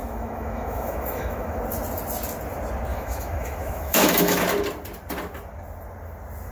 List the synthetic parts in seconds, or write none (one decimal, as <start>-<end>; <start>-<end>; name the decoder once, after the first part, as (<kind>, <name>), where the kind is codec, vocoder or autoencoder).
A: 0.0-1.6 (autoencoder, DAC-VAE); 2.9-4.4